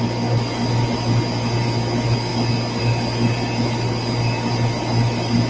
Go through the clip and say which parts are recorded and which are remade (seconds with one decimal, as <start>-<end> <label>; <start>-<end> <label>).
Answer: 0.0-5.5 recorded